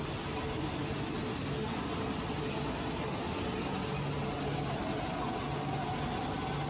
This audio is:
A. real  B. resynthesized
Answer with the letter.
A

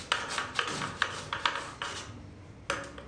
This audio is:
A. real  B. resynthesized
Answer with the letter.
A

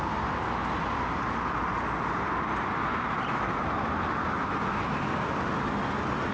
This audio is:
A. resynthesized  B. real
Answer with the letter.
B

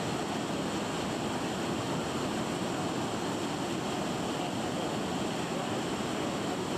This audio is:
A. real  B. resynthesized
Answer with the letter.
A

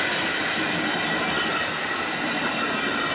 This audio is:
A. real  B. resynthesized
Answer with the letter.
A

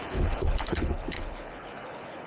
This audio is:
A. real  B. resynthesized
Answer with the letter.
B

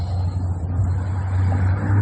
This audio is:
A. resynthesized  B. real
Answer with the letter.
B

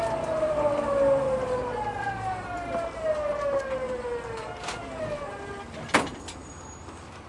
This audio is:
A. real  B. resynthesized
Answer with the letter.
A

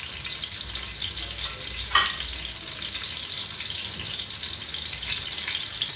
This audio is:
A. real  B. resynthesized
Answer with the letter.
A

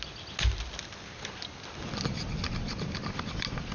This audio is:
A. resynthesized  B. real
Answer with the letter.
B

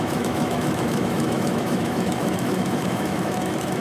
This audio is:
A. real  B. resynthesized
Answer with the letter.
B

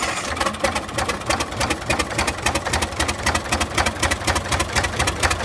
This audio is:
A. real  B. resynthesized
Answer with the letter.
A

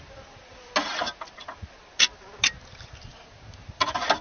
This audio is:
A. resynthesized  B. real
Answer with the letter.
B